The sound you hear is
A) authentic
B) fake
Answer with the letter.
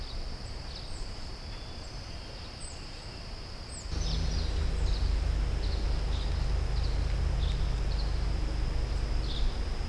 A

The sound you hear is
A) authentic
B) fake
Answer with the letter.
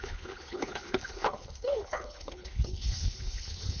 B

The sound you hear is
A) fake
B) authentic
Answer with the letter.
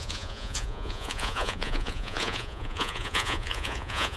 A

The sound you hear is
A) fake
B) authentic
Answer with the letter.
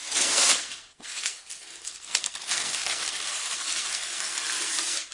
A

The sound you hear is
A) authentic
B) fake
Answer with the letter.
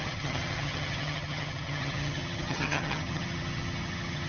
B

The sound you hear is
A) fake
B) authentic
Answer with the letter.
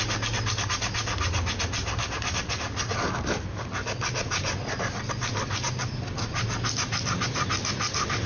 B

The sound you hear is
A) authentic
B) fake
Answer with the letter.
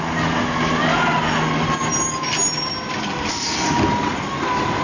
A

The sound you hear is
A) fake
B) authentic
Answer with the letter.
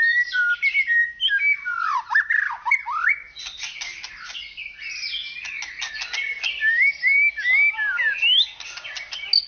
B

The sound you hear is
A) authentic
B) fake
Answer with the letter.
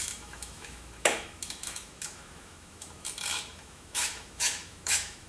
B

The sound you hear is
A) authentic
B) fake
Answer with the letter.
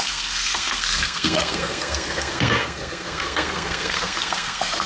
B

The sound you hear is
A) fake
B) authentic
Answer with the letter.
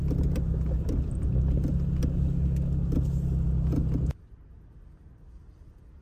B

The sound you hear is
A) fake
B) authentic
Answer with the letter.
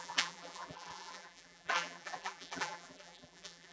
A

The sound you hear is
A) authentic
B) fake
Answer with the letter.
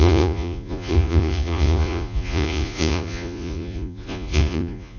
B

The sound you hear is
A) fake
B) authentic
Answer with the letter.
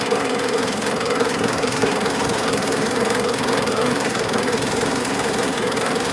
A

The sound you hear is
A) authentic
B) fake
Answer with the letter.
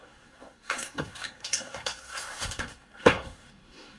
B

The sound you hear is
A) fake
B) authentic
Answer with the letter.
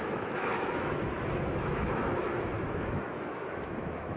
A